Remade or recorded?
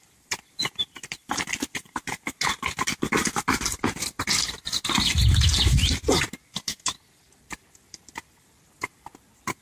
recorded